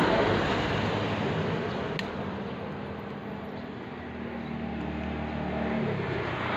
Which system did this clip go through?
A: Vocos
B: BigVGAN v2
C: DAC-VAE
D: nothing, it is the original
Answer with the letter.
D